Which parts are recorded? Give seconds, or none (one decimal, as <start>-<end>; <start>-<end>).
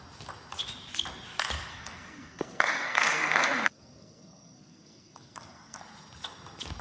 0.0-1.7; 5.8-6.8